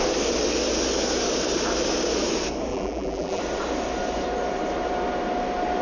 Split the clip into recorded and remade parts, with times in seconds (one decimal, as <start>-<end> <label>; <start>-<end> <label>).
0.0-2.7 recorded; 2.7-3.4 remade; 3.4-5.8 recorded

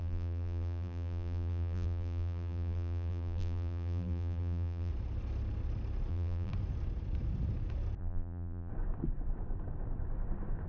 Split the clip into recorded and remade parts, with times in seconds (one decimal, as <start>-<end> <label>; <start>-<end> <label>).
0.0-4.9 remade; 4.9-6.1 recorded; 6.1-6.5 remade; 6.5-8.0 recorded; 8.0-8.7 remade; 8.7-10.7 recorded

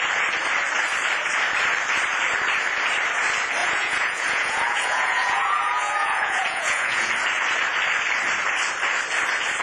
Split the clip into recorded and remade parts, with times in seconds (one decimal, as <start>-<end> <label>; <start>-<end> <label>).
0.0-3.6 recorded; 3.6-7.1 remade; 7.1-9.6 recorded

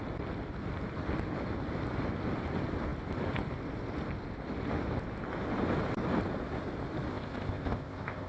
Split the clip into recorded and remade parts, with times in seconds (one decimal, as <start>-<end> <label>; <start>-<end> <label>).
0.0-7.1 recorded; 7.1-8.3 remade

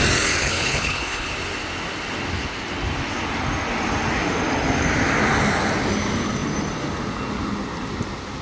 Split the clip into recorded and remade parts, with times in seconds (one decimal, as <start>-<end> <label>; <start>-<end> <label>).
0.0-0.4 recorded; 0.4-1.3 remade; 1.3-8.4 recorded

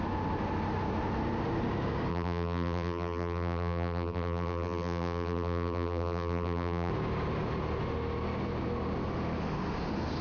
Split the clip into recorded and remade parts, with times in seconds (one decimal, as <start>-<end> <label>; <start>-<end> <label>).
0.0-2.1 recorded; 2.1-6.9 remade; 6.9-10.2 recorded

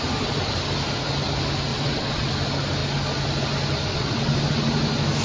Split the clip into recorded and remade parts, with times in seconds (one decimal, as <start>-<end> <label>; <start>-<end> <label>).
0.0-1.7 recorded; 1.7-2.3 remade; 2.3-3.9 recorded; 3.9-4.4 remade; 4.4-5.2 recorded

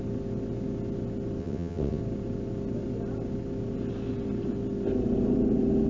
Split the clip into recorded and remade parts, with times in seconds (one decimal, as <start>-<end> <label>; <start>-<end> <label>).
0.0-1.4 recorded; 1.4-2.0 remade; 2.0-5.9 recorded